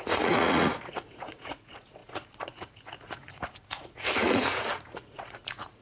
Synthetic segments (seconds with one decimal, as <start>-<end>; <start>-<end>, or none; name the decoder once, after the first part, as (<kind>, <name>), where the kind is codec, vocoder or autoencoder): 0.0-5.8 (vocoder, Vocos)